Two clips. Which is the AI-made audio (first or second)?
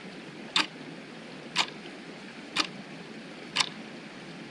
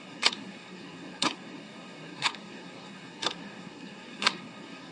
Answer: second